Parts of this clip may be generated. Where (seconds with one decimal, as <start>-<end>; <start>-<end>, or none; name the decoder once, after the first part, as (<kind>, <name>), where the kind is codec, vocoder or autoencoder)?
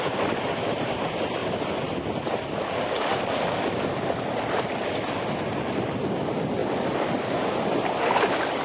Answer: none